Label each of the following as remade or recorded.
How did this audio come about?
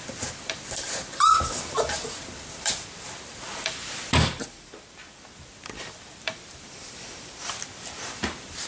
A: remade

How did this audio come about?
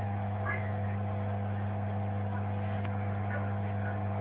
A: recorded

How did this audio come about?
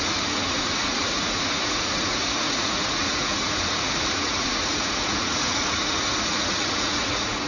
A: remade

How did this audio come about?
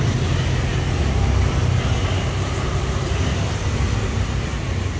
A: recorded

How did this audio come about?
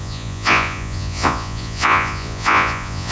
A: remade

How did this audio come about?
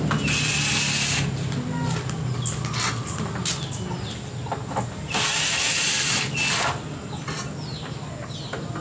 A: recorded